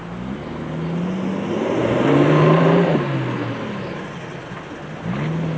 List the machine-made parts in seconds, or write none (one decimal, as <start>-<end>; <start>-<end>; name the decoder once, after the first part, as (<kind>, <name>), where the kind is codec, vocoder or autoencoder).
1.8-4.1 (vocoder, BigVGAN v2)